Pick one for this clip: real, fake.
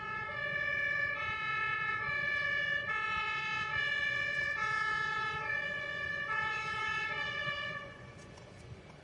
fake